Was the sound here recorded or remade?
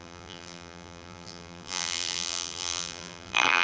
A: remade